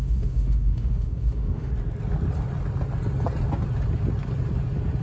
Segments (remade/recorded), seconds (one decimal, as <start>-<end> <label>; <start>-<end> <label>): 0.0-1.7 remade; 1.7-5.0 recorded